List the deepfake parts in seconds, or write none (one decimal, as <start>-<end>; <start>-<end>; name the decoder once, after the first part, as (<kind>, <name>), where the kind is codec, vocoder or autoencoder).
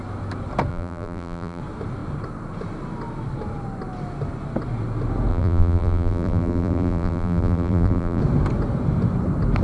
0.7-1.6 (vocoder, BigVGAN v2); 5.3-8.2